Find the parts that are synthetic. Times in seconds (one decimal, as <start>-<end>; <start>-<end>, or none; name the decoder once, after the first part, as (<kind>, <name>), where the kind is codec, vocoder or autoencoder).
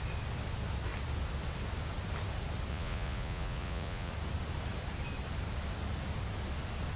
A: 2.7-4.1 (vocoder, Vocos)